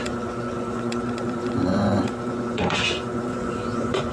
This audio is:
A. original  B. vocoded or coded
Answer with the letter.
B